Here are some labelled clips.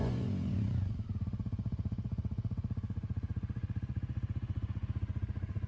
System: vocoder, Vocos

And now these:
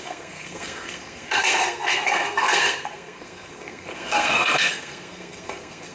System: codec, SNAC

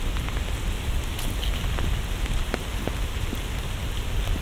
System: none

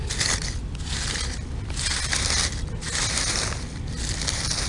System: none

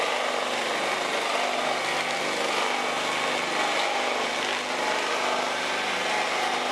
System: none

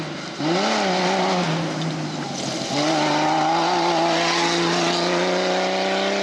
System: none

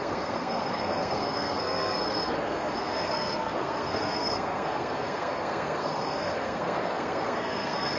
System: codec, SNAC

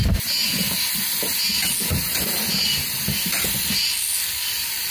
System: none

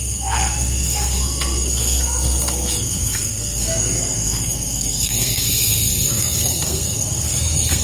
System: codec, SNAC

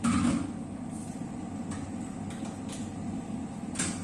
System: none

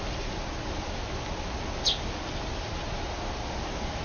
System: none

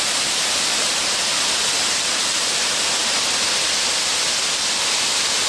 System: none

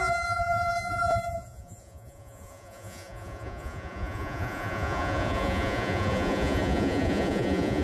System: vocoder, Vocos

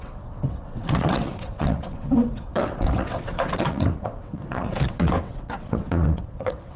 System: vocoder, WaveNeXt